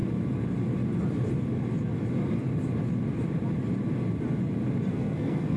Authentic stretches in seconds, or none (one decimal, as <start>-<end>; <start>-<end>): 0.0-4.9